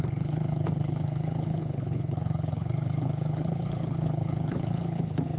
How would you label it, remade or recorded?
remade